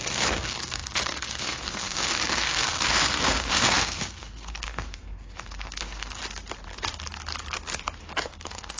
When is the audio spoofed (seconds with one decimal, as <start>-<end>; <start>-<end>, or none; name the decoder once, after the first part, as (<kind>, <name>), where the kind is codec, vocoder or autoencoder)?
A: 0.0-6.2 (codec, SNAC); 8.2-8.8